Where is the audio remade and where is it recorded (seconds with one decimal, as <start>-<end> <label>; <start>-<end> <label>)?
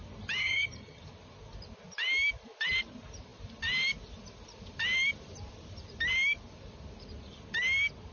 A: 0.0-0.4 recorded; 0.4-1.0 remade; 1.0-8.1 recorded